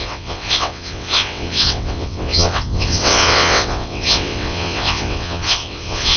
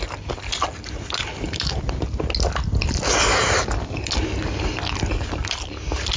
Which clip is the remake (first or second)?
first